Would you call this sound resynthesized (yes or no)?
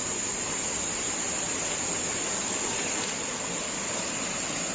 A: no